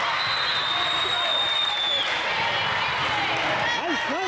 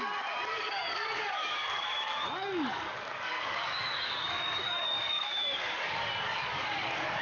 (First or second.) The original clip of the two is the first